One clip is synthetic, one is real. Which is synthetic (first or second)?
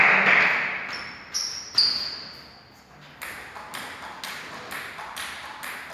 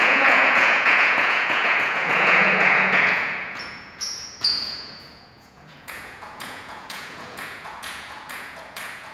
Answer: second